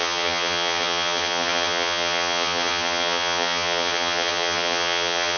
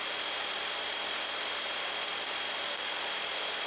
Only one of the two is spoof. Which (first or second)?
first